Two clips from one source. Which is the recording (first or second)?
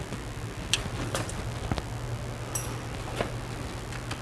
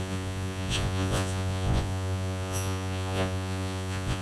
first